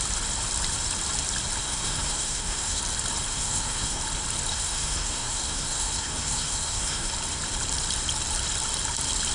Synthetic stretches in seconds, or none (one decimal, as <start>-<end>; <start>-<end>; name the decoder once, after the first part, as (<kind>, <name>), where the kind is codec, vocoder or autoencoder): 1.6-2.8 (codec, SNAC); 3.3-4.0; 4.5-7.1